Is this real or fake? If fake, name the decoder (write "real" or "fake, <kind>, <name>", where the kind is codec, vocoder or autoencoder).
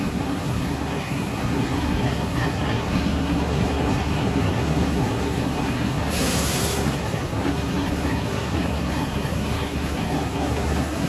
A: fake, codec, SNAC